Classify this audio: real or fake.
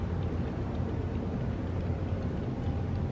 real